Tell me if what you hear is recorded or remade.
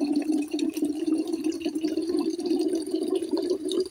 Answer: remade